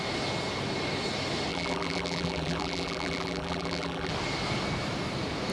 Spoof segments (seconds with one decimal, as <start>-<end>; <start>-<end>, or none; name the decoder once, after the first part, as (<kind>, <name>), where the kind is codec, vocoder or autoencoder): 1.5-4.1 (vocoder, BigVGAN v2)